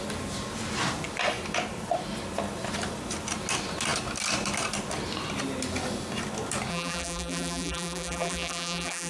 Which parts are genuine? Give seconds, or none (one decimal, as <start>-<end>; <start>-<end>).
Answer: 0.0-6.7